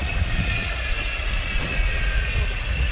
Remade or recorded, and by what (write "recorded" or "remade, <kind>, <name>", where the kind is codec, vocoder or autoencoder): remade, vocoder, Vocos